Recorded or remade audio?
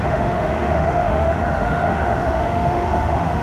remade